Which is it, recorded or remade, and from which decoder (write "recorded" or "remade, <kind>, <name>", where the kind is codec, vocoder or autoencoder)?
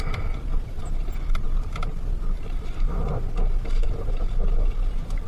recorded